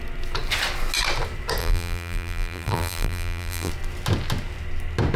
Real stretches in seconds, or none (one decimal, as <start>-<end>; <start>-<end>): 0.0-1.6; 3.7-5.2